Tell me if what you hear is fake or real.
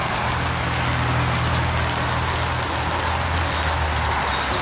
real